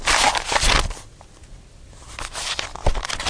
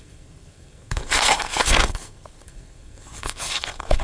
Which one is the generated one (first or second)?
second